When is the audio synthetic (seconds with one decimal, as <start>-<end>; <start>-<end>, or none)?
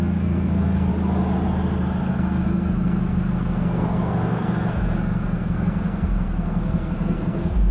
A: 0.0-0.9; 2.1-7.7